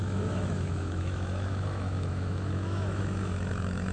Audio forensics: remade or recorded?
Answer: remade